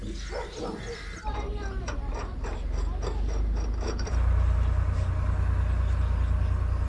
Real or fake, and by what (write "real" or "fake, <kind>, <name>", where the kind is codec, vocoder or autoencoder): real